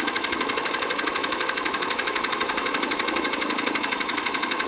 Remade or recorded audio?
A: remade